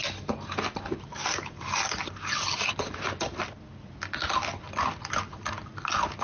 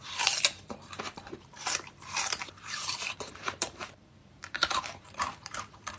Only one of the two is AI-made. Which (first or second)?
second